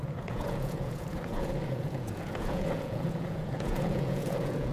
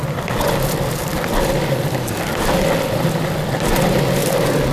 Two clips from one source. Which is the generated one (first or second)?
first